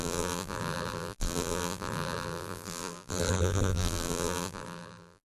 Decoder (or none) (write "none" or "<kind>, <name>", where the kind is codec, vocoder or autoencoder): vocoder, BigVGAN v2